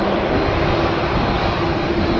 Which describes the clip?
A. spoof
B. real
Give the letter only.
B